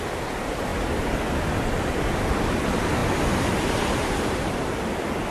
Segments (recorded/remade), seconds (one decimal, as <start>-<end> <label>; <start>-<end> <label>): 0.0-0.7 remade; 0.7-1.4 recorded; 1.4-5.3 remade